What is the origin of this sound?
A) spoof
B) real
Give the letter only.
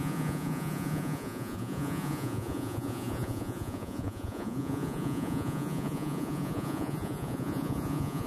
A